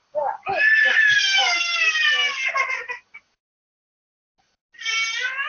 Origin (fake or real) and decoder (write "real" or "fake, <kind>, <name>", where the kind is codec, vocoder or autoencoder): real